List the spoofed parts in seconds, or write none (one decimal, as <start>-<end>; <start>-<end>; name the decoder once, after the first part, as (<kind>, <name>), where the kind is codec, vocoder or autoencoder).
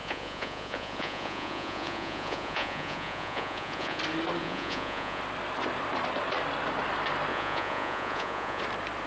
0.0-4.0 (vocoder, Vocos); 4.4-5.2; 7.3-8.6